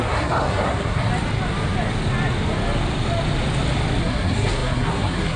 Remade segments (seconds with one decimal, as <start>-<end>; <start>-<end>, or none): 0.0-1.1; 4.0-5.4